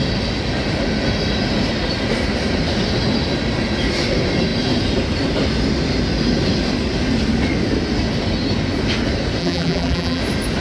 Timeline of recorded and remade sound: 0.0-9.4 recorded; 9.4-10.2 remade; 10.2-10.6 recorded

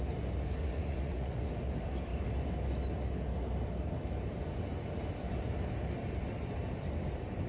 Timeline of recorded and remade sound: 0.0-0.6 recorded; 0.6-1.5 remade; 1.5-7.5 recorded

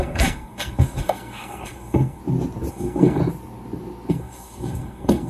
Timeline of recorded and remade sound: 0.0-2.2 remade; 2.2-2.7 recorded; 2.7-3.2 remade; 3.2-4.1 recorded; 4.1-5.3 remade

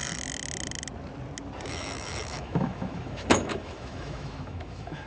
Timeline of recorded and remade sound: 0.0-1.7 recorded; 1.7-5.1 remade

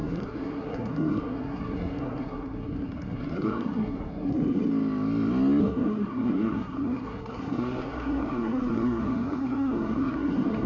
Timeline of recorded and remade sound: 0.0-4.6 remade; 4.6-5.6 recorded; 5.6-10.7 remade